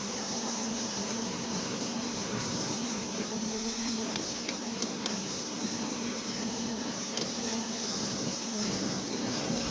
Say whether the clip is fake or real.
fake